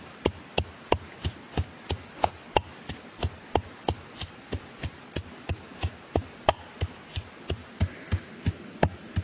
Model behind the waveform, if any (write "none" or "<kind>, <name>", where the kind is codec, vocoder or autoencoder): none